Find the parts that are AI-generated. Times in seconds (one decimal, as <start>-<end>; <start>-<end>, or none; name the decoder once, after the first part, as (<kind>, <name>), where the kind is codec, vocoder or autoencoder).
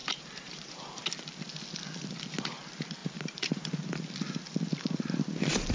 0.0-1.0 (vocoder, BigVGAN v2); 3.0-3.6